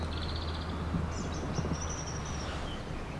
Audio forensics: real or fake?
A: real